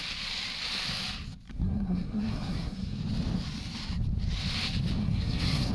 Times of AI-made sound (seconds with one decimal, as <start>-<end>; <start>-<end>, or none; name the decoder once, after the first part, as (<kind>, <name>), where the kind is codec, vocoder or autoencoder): 1.5-3.0 (codec, SNAC); 5.0-5.7